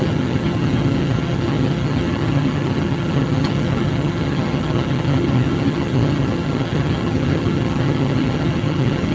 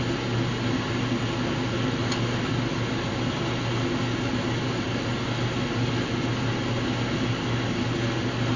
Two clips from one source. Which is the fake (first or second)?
first